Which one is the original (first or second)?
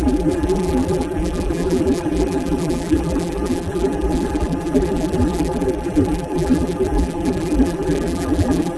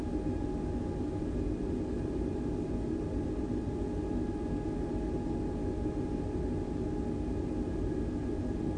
second